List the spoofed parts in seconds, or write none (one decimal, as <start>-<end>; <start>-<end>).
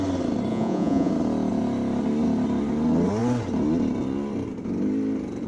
0.5-1.1